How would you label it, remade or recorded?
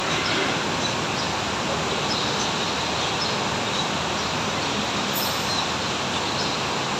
recorded